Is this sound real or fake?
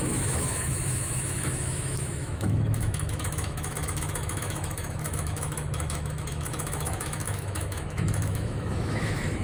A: fake